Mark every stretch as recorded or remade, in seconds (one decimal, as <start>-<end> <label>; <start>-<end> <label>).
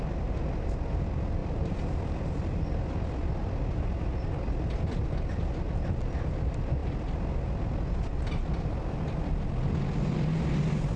0.0-11.0 recorded